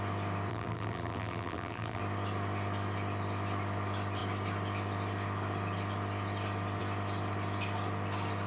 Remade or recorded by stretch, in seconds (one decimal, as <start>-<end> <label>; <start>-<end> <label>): 0.0-0.5 recorded; 0.5-2.0 remade; 2.0-8.5 recorded